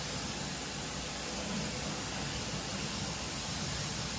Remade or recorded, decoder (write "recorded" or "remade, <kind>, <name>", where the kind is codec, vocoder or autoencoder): recorded